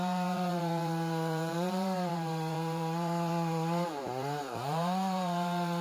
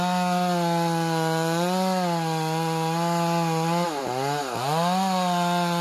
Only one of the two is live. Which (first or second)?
second